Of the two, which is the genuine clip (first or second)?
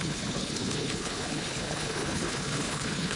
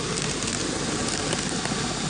second